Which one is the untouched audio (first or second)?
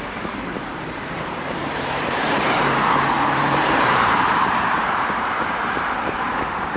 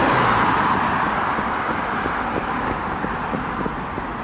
second